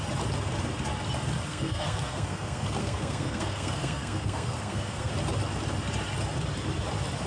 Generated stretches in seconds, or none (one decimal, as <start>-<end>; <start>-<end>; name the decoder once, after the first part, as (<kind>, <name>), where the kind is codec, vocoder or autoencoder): 1.5-5.1 (codec, SNAC)